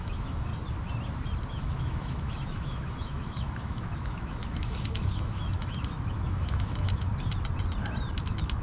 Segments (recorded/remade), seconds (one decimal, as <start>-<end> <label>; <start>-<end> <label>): 0.0-0.5 remade; 0.5-1.5 recorded; 1.5-7.1 remade; 7.1-8.2 recorded; 8.2-8.6 remade